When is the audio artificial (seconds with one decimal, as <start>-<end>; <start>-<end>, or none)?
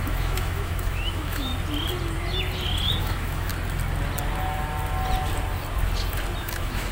0.0-1.5; 3.0-3.5; 6.4-6.9